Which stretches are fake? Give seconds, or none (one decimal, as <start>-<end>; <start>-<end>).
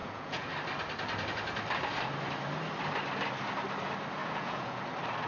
0.0-0.5; 4.2-4.8